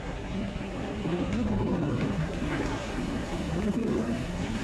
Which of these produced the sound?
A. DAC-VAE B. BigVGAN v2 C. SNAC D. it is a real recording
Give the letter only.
C